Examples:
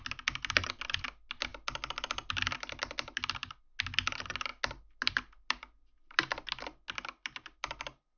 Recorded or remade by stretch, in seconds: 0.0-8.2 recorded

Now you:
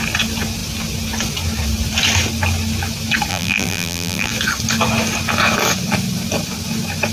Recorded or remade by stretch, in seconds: 0.0-3.3 recorded; 3.3-4.3 remade; 4.3-7.1 recorded